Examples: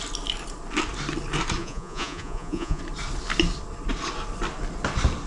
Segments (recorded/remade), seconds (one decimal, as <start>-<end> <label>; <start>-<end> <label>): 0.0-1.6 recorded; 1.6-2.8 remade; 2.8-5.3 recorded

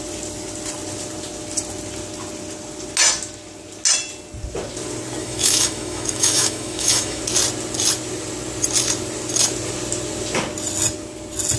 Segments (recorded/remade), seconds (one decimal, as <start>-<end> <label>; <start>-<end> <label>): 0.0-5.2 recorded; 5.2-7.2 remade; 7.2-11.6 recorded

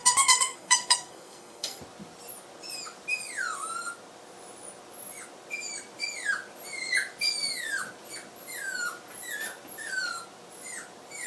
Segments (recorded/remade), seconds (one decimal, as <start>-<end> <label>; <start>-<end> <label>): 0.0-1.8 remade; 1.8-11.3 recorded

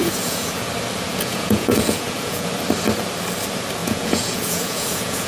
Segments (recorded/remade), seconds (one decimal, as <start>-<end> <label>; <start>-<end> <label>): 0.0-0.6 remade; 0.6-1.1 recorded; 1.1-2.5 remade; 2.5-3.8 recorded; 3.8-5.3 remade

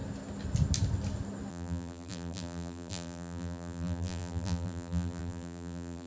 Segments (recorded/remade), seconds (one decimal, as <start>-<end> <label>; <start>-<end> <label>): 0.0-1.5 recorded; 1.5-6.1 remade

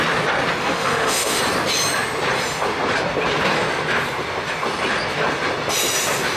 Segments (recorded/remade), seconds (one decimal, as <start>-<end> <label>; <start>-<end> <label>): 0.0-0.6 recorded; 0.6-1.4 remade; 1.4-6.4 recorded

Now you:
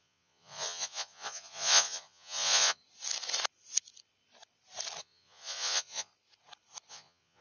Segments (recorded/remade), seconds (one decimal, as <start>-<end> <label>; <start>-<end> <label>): 0.0-2.8 remade; 2.8-5.0 recorded; 5.0-6.1 remade; 6.1-6.9 recorded; 6.9-7.4 remade

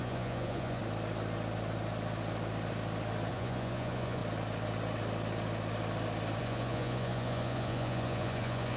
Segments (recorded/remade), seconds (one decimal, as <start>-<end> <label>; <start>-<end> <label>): 0.0-0.8 remade; 0.8-3.3 recorded; 3.3-4.2 remade; 4.2-6.4 recorded; 6.4-8.8 remade